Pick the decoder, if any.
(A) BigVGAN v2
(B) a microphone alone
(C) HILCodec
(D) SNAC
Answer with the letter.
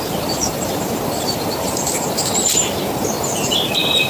A